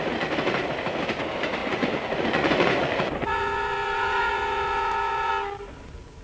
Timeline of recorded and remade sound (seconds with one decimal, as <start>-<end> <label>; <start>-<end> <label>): 0.0-1.6 recorded; 1.6-5.3 remade; 5.3-6.2 recorded